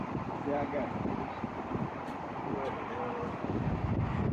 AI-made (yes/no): no